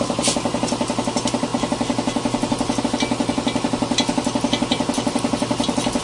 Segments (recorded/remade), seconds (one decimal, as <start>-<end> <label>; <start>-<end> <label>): 0.0-6.0 recorded